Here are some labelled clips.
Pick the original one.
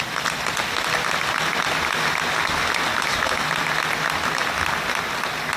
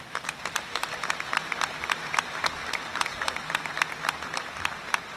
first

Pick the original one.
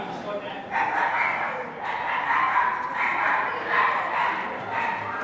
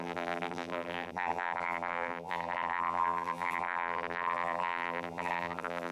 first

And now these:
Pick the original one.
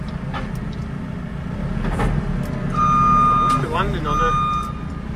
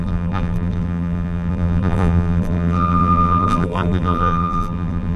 first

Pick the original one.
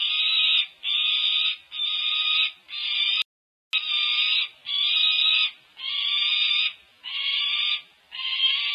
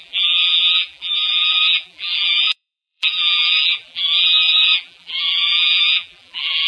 first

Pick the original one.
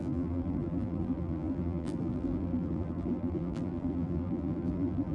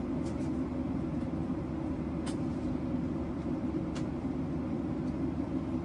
second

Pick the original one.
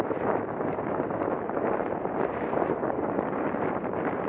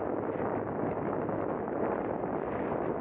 second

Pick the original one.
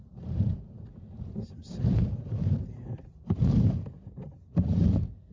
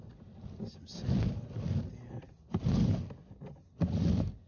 second